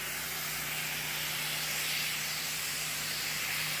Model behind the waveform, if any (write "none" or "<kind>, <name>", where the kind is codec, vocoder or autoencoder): none